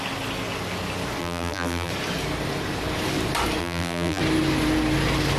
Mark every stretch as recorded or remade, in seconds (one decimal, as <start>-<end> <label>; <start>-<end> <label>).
0.0-1.2 recorded; 1.2-1.9 remade; 1.9-3.6 recorded; 3.6-4.2 remade; 4.2-5.4 recorded